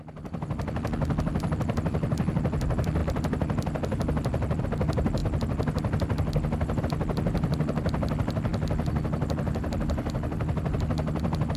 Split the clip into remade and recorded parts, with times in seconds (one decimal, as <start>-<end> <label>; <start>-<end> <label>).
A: 0.0-11.6 recorded